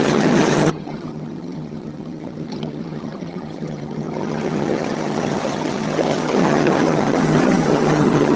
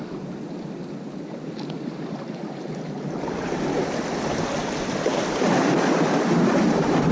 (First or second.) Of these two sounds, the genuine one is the second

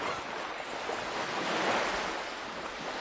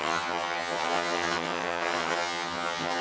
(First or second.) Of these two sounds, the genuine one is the first